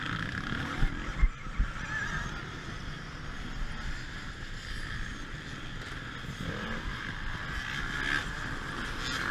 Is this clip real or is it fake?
real